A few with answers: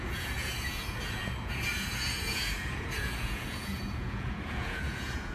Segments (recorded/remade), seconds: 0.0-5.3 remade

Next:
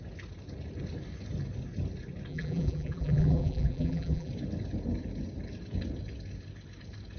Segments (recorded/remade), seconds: 0.0-2.3 recorded; 2.3-4.3 remade; 4.3-7.2 recorded

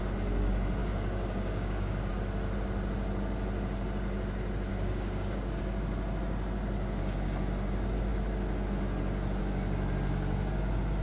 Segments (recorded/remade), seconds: 0.0-0.8 recorded; 0.8-2.1 remade; 2.1-4.7 recorded; 4.7-5.6 remade; 5.6-11.0 recorded

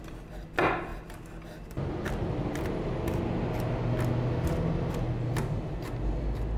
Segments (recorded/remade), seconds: 0.0-6.6 recorded

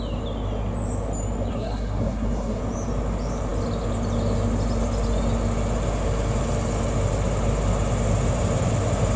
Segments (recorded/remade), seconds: 0.0-1.5 recorded; 1.5-2.6 remade; 2.6-9.2 recorded

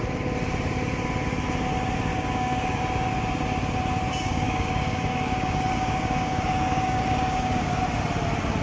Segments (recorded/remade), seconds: 0.0-2.1 recorded; 2.1-2.8 remade; 2.8-4.1 recorded; 4.1-7.8 remade; 7.8-8.6 recorded

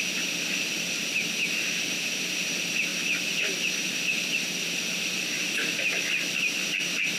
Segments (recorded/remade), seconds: 0.0-7.2 remade